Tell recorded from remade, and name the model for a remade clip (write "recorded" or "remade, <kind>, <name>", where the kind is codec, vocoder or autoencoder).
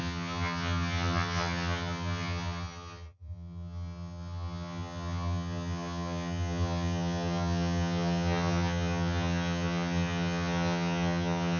remade, vocoder, HiFi-GAN